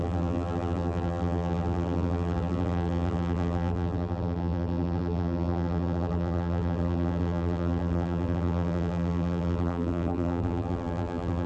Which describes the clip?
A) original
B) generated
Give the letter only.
B